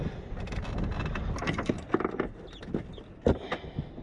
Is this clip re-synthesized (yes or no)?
no